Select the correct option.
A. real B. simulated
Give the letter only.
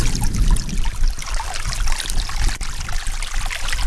A